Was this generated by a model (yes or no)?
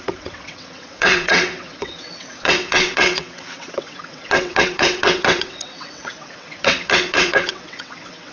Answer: yes